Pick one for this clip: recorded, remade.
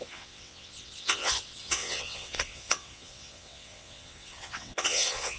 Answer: remade